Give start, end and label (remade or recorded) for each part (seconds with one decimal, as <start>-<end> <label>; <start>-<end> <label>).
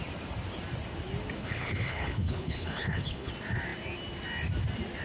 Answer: 0.0-1.4 recorded; 1.4-3.3 remade; 3.3-5.0 recorded